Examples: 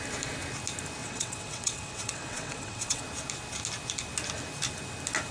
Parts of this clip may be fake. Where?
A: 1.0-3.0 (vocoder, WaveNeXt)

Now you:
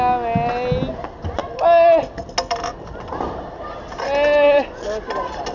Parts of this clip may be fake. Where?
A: none

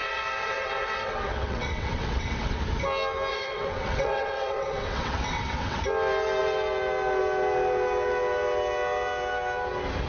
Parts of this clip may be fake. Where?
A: 0.0-2.6 (vocoder, WaveNeXt); 3.3-5.8